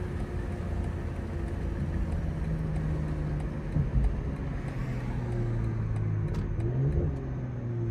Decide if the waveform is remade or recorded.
recorded